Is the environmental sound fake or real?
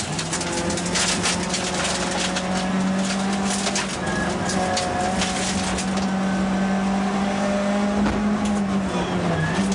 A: real